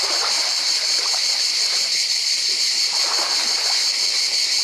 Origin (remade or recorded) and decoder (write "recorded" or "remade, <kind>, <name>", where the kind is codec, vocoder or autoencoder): remade, vocoder, BigVGAN v2